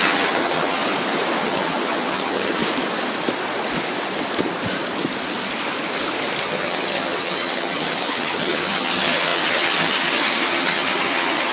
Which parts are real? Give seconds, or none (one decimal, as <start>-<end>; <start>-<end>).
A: 0.8-1.4; 2.6-6.4